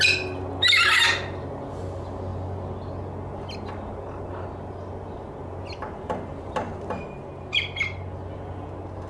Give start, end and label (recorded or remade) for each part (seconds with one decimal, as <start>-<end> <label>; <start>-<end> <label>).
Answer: 0.0-9.1 recorded